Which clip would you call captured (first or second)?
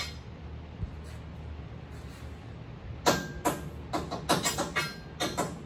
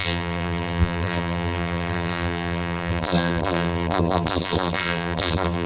first